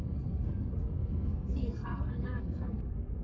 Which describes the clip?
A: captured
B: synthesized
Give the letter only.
B